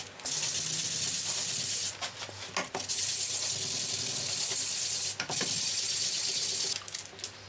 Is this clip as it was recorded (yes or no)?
yes